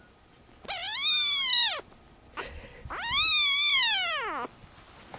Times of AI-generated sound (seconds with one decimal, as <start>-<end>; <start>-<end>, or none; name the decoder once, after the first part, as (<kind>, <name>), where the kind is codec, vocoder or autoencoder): none